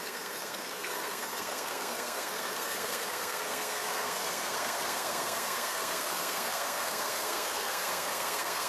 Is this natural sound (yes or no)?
no